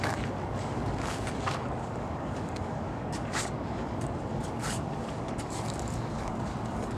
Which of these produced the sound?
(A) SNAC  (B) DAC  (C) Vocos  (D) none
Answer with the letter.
B